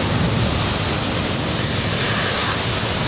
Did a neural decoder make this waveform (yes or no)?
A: no